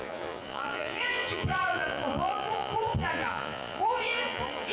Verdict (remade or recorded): remade